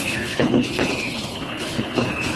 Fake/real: fake